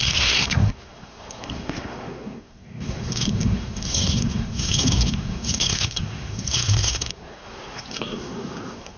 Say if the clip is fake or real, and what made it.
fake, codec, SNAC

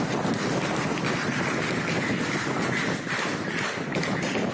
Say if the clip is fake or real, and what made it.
real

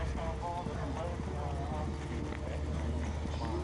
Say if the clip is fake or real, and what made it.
real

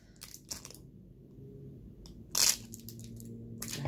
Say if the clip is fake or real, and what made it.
real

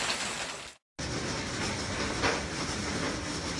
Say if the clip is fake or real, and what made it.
real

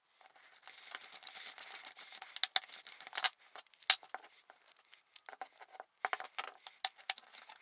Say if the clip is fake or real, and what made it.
real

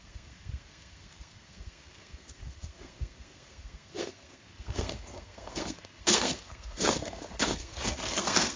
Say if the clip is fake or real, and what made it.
fake, codec, SNAC